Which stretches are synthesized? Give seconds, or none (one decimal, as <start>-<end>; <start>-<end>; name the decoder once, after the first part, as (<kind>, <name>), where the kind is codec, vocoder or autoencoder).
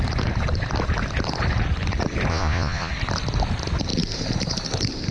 2.3-2.9 (vocoder, Vocos)